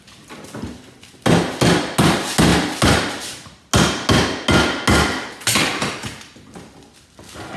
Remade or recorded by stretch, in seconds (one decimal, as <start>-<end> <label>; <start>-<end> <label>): 0.0-7.6 recorded